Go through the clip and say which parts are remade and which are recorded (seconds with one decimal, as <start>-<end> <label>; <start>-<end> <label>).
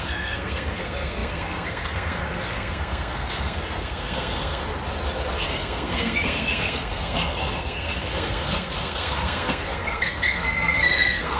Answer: 0.0-4.6 remade; 4.6-5.3 recorded; 5.3-11.4 remade